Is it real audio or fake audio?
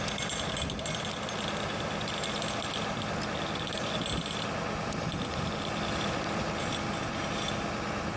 real